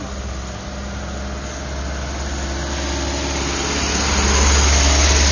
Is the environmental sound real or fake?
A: real